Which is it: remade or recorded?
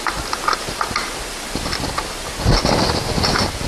remade